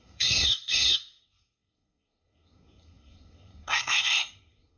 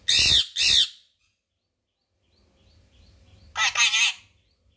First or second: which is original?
second